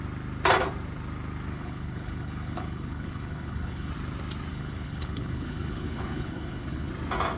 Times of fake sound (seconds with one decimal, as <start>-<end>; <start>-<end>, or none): 1.5-3.9; 4.5-6.9

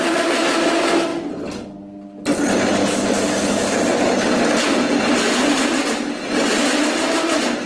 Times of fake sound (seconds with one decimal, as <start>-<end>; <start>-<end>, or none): none

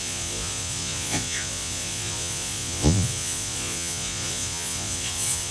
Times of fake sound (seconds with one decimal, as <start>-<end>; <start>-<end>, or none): 0.0-5.5

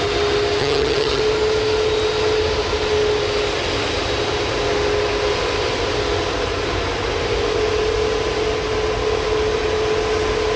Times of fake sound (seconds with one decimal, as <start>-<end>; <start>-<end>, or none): 0.6-1.2

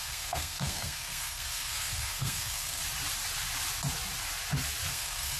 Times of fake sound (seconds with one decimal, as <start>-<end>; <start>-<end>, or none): 0.0-2.8; 4.9-5.4

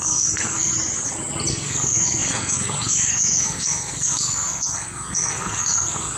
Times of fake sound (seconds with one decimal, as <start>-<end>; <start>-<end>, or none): 0.0-0.7; 1.5-6.2

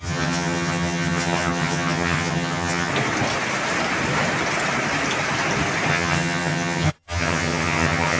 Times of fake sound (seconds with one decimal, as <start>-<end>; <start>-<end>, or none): 0.0-2.9; 5.9-8.2

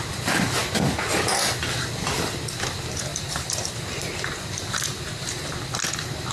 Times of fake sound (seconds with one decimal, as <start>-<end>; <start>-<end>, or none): 3.1-5.5